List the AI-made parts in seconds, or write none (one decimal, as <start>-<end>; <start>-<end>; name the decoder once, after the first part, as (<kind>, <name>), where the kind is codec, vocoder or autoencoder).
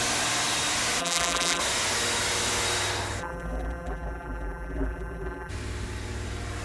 1.0-1.6 (vocoder, BigVGAN v2); 3.2-5.5